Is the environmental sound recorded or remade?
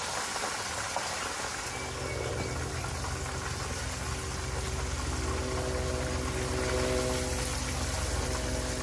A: recorded